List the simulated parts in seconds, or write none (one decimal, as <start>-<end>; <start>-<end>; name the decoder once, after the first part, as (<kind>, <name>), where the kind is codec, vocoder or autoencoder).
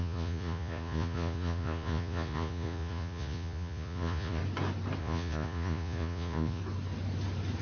0.0-4.4 (vocoder, Vocos); 5.0-6.6